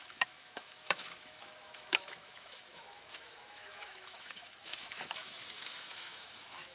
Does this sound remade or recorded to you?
remade